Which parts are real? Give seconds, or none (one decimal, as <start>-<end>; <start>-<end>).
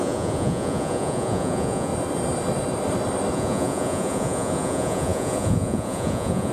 1.9-3.3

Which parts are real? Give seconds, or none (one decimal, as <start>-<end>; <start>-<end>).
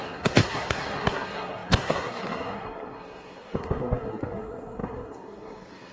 none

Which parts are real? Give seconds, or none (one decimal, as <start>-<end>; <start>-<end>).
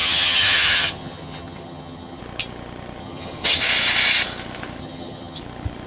2.2-3.0; 3.6-4.8; 5.4-5.9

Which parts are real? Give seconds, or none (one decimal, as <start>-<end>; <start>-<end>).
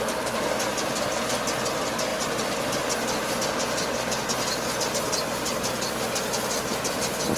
0.0-7.4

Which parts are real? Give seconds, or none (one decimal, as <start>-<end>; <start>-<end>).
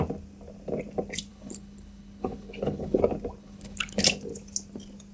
0.0-1.3; 3.0-3.4; 4.0-5.1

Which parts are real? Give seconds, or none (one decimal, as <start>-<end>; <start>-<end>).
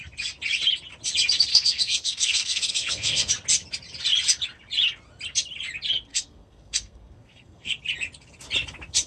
0.0-1.5; 3.3-6.1; 7.8-9.1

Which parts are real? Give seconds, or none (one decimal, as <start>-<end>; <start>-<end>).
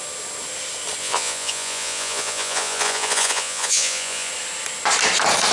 0.0-1.0; 4.3-5.5